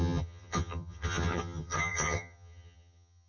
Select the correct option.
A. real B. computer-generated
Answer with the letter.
B